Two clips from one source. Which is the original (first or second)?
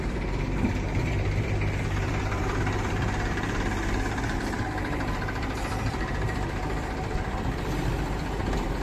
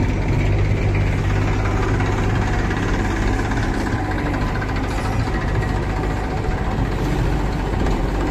second